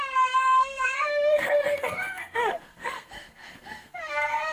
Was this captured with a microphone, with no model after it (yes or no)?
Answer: no